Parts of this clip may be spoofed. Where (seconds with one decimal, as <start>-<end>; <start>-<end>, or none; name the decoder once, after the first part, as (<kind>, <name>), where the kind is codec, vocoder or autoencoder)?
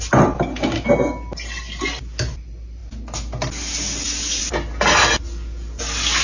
none